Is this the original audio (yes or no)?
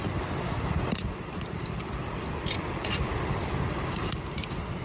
no